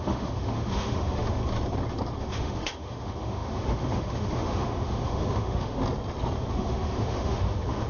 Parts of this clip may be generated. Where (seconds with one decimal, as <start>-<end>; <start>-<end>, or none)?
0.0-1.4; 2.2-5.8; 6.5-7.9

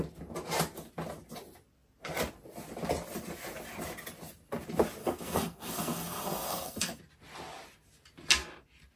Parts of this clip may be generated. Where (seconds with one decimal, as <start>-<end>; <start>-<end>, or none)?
5.0-7.0

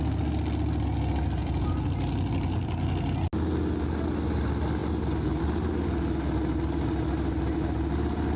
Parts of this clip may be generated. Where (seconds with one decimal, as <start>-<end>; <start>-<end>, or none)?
1.4-1.9

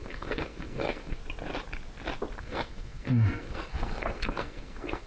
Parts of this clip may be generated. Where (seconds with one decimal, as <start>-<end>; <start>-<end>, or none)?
0.0-1.2; 2.4-5.1